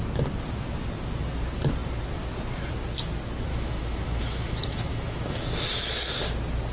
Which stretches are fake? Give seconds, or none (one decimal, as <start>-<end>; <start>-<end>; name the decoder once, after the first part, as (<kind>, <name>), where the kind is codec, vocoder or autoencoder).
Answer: 3.5-6.2 (autoencoder, DAC-VAE)